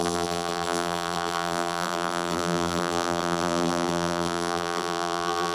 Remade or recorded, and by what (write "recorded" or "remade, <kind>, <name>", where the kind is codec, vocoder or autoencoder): remade, vocoder, BigVGAN v2